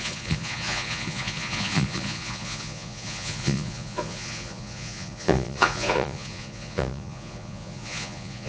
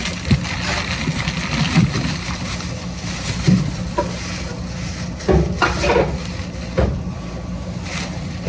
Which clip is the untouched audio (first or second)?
second